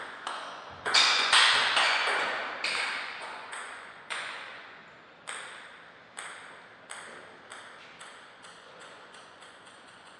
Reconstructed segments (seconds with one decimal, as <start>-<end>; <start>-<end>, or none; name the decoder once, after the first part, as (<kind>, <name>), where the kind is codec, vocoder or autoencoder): 0.0-2.4 (vocoder, Vocos); 3.0-4.8; 8.0-10.2